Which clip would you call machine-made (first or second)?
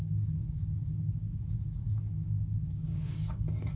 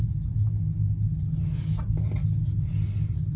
first